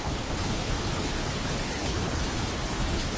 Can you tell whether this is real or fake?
fake